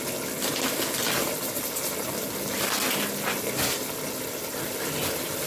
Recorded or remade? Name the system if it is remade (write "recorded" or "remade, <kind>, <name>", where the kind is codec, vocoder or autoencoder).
recorded